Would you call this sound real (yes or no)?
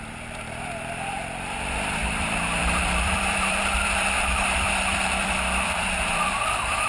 no